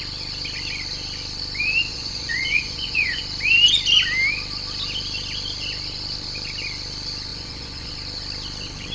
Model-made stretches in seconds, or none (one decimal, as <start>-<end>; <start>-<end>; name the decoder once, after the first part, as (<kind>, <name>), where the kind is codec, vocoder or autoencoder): 1.9-3.2 (vocoder, Vocos); 7.3-7.9